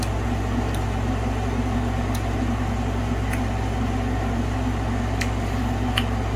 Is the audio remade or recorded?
recorded